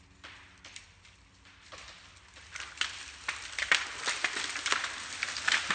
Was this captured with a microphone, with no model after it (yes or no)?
yes